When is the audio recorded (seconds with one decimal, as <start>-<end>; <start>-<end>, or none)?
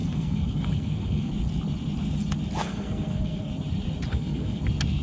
1.3-2.6; 3.5-4.1; 4.6-5.0